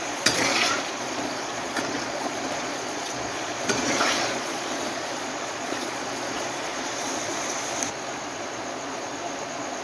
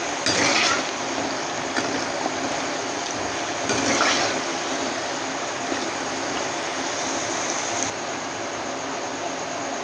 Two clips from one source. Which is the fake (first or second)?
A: first